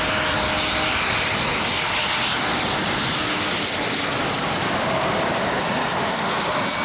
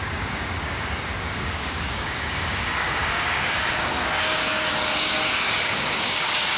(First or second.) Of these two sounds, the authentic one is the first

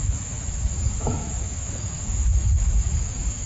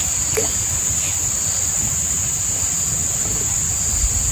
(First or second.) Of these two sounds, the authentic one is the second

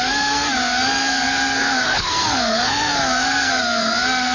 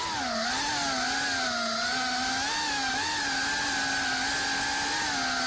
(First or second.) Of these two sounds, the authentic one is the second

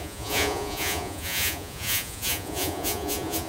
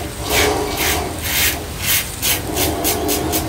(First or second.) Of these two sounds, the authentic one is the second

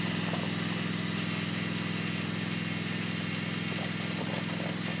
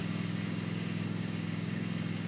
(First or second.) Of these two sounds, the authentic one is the first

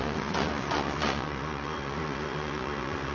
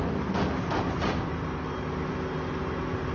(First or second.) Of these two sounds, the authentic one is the second